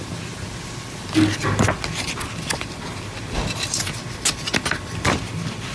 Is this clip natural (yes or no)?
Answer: yes